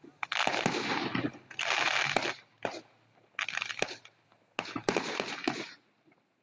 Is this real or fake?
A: real